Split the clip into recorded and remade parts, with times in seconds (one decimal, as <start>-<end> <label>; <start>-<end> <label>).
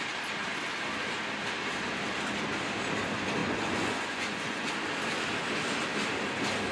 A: 0.0-3.4 recorded; 3.4-4.7 remade; 4.7-6.7 recorded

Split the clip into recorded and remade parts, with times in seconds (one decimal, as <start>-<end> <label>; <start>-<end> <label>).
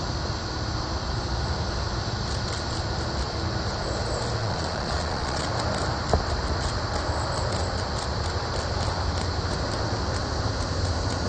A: 0.0-4.4 recorded; 4.4-5.5 remade; 5.5-11.3 recorded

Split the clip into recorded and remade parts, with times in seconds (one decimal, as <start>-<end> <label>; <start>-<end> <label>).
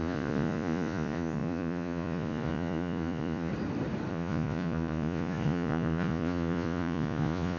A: 0.0-3.5 remade; 3.5-4.1 recorded; 4.1-7.6 remade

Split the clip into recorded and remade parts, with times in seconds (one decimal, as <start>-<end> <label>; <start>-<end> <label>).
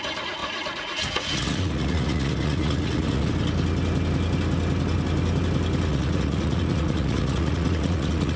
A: 0.0-0.4 recorded; 0.4-3.3 remade; 3.3-5.9 recorded; 5.9-8.4 remade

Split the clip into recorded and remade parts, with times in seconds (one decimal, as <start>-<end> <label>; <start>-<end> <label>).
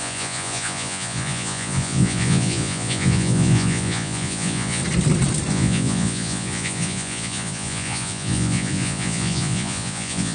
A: 0.0-4.8 remade; 4.8-5.5 recorded; 5.5-10.3 remade